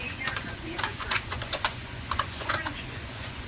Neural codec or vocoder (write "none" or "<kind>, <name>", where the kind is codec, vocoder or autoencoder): vocoder, Vocos